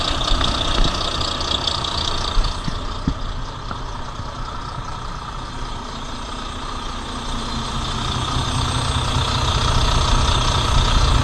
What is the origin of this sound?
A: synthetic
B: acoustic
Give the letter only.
B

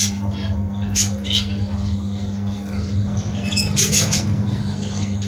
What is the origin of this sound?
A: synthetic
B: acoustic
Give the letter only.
A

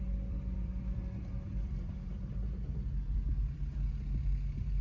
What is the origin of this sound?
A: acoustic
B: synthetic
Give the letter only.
B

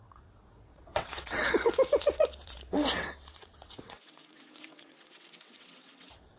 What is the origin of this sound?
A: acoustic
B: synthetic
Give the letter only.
B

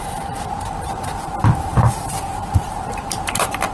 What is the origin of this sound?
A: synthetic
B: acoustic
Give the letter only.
A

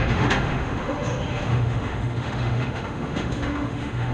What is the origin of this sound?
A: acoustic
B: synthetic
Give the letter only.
B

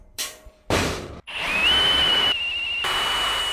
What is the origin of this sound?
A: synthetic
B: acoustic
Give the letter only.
A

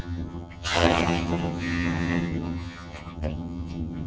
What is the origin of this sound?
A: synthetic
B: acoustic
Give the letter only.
A